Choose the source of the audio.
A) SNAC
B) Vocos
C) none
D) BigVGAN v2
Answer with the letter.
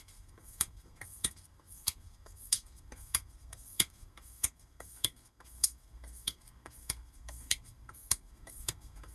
A